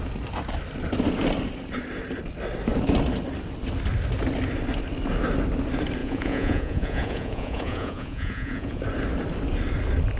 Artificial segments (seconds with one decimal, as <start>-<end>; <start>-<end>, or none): 6.0-8.8